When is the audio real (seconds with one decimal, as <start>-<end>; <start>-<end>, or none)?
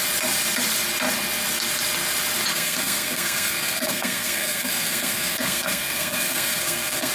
0.0-2.5